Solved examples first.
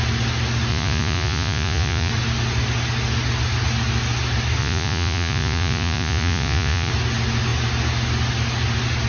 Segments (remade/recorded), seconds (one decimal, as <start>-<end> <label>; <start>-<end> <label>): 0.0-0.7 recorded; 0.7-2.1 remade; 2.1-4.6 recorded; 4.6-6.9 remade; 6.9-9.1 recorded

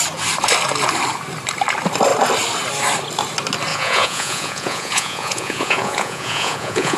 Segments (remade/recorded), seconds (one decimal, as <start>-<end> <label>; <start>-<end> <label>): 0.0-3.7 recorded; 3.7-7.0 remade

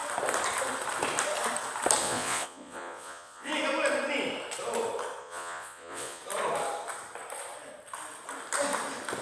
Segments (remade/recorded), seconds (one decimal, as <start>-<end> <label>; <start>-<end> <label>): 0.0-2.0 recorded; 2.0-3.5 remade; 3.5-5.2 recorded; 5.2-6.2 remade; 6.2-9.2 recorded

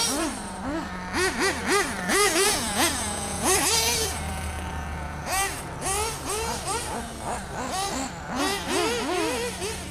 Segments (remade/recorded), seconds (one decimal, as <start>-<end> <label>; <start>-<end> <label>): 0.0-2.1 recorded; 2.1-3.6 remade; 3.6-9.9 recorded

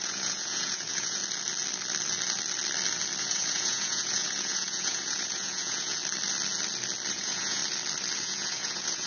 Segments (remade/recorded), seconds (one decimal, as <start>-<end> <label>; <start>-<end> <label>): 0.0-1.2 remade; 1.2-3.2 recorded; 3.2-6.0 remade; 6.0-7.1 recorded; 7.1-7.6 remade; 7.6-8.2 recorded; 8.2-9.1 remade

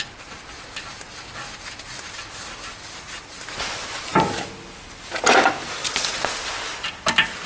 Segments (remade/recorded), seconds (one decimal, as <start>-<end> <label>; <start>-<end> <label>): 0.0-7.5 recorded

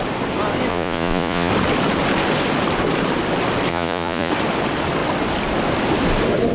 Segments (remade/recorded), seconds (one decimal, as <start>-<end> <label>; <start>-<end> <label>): 0.0-0.7 recorded; 0.7-1.5 remade; 1.5-3.7 recorded; 3.7-4.3 remade; 4.3-6.5 recorded

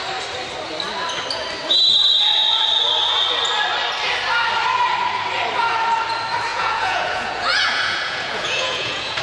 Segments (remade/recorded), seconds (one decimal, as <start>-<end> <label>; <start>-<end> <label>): 0.0-6.5 recorded; 6.5-9.2 remade